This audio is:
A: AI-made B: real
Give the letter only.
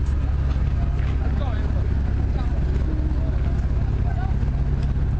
B